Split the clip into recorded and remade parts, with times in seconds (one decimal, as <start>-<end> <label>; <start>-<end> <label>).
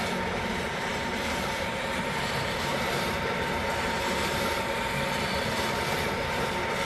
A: 0.0-0.9 recorded; 0.9-4.3 remade; 4.3-6.8 recorded